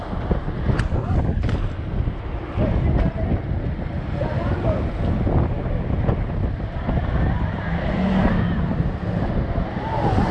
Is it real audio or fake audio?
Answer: real